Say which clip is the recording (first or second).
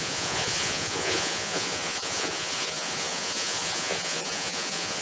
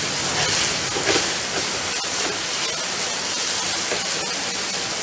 second